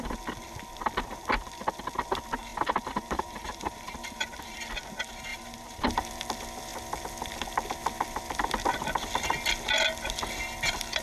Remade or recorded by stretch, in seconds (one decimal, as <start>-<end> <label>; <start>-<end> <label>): 0.0-2.5 recorded; 2.5-4.7 remade; 4.7-5.3 recorded; 5.3-6.3 remade; 6.3-11.0 recorded